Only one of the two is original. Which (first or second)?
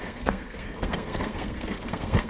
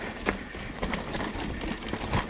second